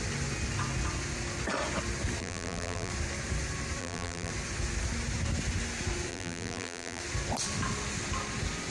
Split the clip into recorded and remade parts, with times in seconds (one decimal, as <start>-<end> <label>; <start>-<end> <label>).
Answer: 0.0-2.2 recorded; 2.2-2.9 remade; 2.9-3.8 recorded; 3.8-4.3 remade; 4.3-6.1 recorded; 6.1-7.0 remade; 7.0-8.7 recorded